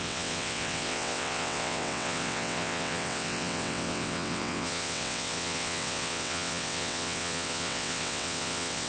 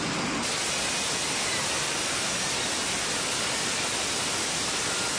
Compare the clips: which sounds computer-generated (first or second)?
first